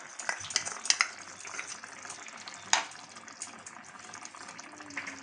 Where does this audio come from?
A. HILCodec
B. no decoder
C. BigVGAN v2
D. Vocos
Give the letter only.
B